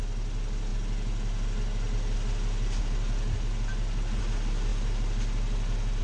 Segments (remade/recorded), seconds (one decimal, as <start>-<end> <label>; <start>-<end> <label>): 0.0-6.0 recorded